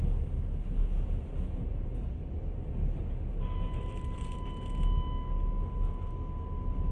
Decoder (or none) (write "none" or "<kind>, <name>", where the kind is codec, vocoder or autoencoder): none